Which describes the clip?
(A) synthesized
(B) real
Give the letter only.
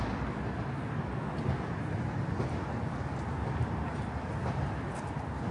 B